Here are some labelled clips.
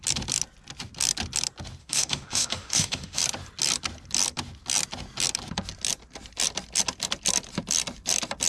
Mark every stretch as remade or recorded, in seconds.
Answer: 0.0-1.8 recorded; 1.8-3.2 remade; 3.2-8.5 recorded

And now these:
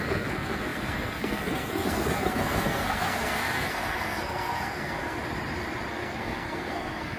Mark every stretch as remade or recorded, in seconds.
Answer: 0.0-5.2 remade; 5.2-5.9 recorded; 5.9-7.2 remade

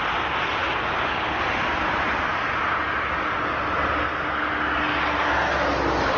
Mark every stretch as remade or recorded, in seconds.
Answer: 0.0-6.2 recorded

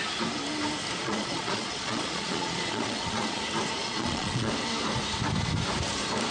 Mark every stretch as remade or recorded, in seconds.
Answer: 0.0-1.0 recorded; 1.0-3.4 remade; 3.4-3.8 recorded; 3.8-4.5 remade; 4.5-6.3 recorded

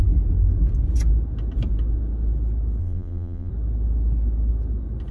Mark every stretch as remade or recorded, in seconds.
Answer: 0.0-2.8 recorded; 2.8-3.5 remade; 3.5-5.1 recorded